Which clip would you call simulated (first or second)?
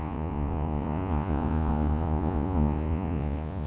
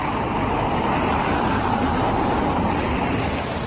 first